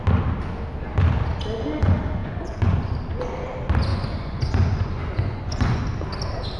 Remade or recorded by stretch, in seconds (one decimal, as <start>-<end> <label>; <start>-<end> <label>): 0.0-2.2 recorded; 2.2-2.9 remade; 2.9-3.9 recorded; 3.9-5.8 remade; 5.8-6.6 recorded